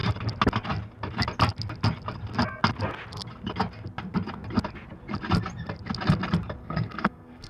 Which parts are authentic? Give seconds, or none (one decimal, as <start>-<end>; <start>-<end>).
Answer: 0.0-6.6